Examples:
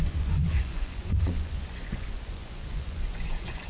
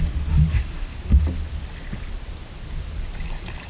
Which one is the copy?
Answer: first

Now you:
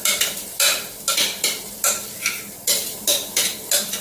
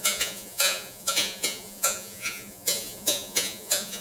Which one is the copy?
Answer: second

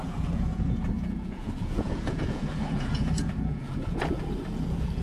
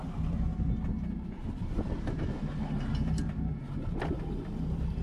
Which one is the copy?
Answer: first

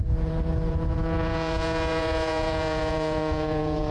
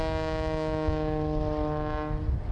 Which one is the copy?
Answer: first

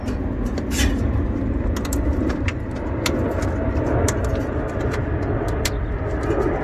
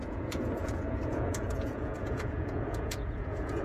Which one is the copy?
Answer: second